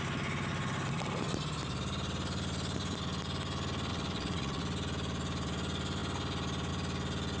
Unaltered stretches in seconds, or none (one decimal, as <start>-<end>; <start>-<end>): 0.0-3.9; 4.6-7.4